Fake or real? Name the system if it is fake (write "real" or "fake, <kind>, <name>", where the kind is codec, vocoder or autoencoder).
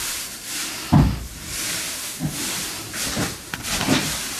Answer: fake, vocoder, BigVGAN v2